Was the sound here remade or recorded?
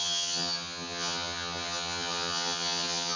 remade